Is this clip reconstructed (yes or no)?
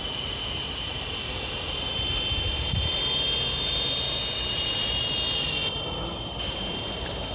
no